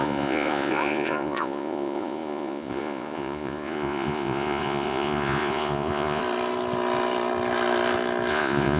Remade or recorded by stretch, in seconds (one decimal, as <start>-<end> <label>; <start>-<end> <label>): 0.0-6.2 remade; 6.2-8.3 recorded; 8.3-8.8 remade